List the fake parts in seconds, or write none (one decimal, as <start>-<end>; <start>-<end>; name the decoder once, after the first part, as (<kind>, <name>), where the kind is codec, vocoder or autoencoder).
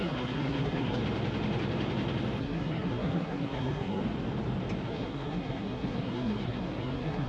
0.0-1.0 (codec, SNAC); 2.4-4.0; 4.9-7.3